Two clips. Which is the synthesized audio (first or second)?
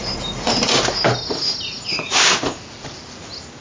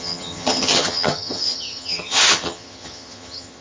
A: second